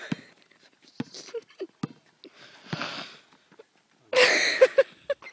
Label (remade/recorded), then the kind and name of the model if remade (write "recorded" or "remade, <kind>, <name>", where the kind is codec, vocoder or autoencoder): recorded